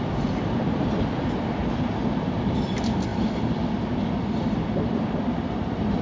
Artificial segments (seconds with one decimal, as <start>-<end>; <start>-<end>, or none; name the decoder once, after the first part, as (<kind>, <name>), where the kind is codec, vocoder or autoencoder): 0.0-1.6 (vocoder, BigVGAN v2); 2.2-3.1; 4.2-6.0

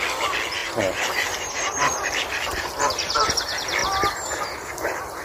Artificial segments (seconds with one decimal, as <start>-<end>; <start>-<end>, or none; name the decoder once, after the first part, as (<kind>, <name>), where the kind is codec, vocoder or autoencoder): 0.6-3.3 (vocoder, BigVGAN v2); 3.8-5.2

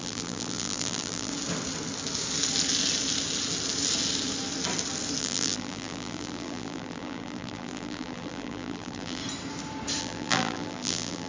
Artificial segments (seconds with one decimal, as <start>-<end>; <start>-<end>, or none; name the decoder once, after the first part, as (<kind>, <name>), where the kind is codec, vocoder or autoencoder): 0.0-1.3 (vocoder, BigVGAN v2); 5.2-9.2; 10.0-11.3

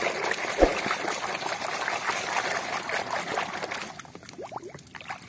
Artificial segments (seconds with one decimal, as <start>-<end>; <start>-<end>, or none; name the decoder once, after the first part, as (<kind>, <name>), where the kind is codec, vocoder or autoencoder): none

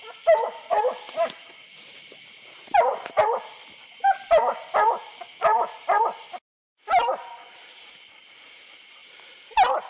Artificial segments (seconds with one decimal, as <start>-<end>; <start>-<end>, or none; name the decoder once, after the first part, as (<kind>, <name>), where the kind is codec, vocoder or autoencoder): none

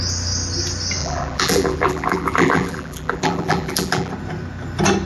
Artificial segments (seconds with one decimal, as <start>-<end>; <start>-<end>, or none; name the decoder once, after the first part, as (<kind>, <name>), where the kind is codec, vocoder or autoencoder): 1.0-4.1 (vocoder, BigVGAN v2)

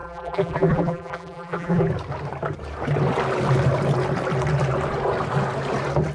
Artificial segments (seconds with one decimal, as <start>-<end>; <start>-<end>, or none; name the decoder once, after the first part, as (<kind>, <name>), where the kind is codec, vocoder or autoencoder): 0.0-1.9 (vocoder, BigVGAN v2)